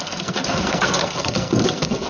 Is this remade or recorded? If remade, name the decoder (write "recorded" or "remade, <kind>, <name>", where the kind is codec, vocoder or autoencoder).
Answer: remade, codec, SNAC